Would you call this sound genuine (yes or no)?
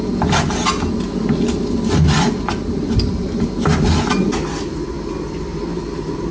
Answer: yes